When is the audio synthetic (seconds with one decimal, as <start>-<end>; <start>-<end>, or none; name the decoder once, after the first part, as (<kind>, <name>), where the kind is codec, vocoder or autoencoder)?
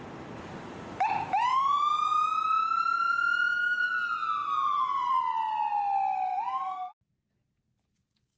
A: 4.4-5.2 (vocoder, BigVGAN v2)